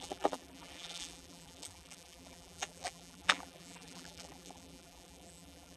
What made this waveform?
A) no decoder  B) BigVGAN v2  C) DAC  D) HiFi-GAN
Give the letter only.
B